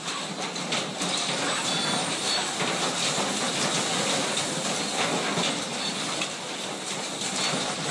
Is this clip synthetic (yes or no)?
no